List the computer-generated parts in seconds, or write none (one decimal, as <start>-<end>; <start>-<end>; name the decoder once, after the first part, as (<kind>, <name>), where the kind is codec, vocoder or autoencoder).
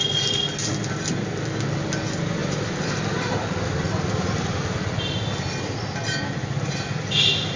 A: none